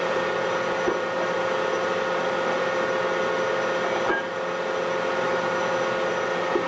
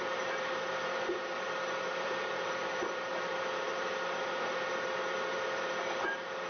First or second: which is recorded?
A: first